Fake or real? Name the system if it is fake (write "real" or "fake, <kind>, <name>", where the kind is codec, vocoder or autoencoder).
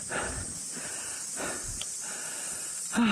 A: real